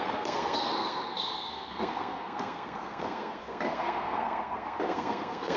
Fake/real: fake